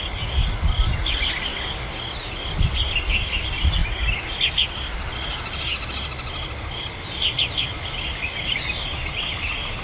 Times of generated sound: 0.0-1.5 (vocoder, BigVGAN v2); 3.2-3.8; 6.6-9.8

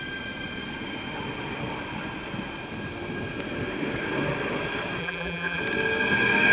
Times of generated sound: 5.0-5.6 (vocoder, BigVGAN v2)

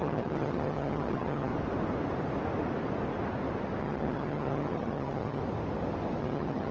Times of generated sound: 0.0-1.5 (vocoder, HiFi-GAN); 3.8-5.4; 6.2-6.7